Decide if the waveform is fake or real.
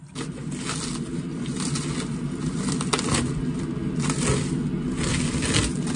real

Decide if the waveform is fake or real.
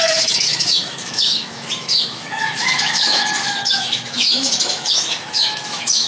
fake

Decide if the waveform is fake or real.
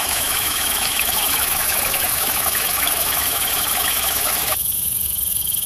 fake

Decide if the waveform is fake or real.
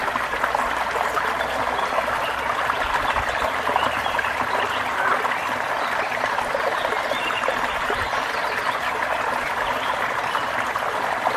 real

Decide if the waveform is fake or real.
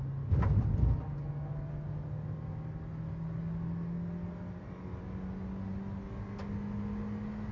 real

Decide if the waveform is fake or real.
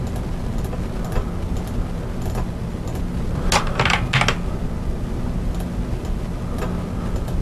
real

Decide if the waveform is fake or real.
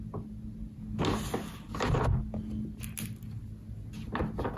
real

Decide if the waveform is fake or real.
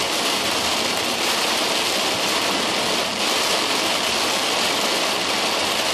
real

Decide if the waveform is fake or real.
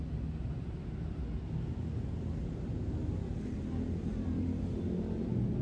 real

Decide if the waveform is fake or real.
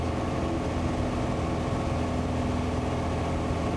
real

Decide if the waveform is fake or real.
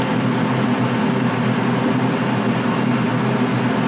real